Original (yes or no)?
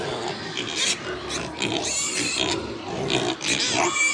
yes